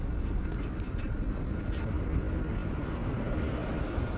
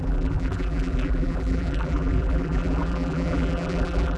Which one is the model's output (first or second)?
second